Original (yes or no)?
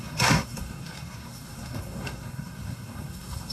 no